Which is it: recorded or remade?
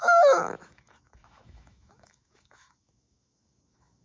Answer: remade